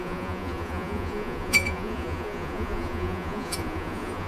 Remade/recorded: remade